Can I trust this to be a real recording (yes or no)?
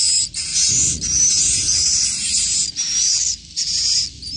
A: yes